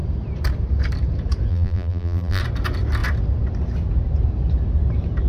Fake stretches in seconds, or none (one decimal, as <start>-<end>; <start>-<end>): 1.5-2.4

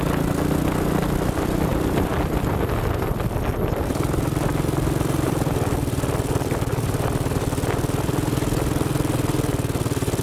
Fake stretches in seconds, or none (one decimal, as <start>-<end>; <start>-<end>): 1.7-2.5; 3.5-7.3

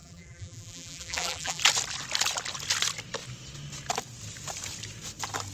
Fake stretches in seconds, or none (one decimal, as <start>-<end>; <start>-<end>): 0.0-1.6

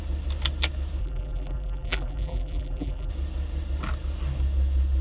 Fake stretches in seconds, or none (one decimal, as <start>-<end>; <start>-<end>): 1.0-3.1

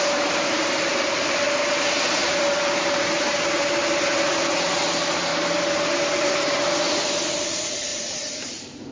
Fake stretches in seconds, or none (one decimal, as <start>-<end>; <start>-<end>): 2.2-3.6; 5.3-6.0; 7.9-8.9